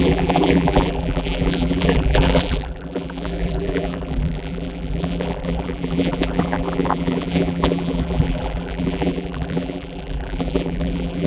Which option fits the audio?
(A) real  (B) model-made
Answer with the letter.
B